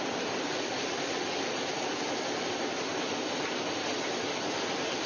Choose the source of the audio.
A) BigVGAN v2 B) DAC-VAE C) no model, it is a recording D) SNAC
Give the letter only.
A